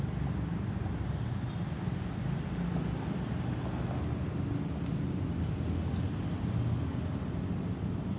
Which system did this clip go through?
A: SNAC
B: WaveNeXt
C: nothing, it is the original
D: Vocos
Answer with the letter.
C